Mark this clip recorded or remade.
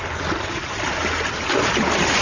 recorded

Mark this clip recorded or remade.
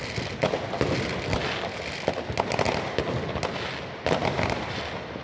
recorded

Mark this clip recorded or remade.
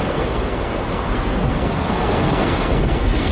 remade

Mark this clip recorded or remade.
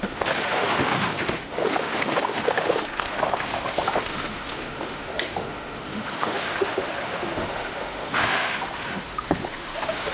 remade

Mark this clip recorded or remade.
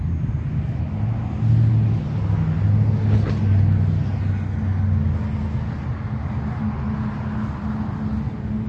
recorded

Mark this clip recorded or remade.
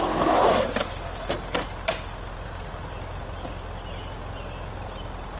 recorded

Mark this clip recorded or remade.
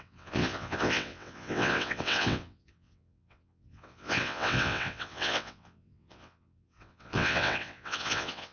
remade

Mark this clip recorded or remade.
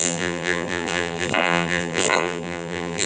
remade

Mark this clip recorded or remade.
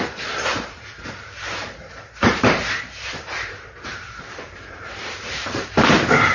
remade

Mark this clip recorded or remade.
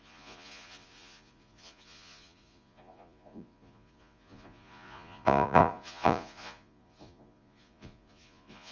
remade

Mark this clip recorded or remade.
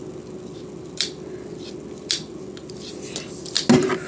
recorded